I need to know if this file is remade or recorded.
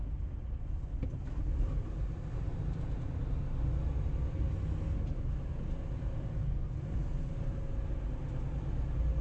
recorded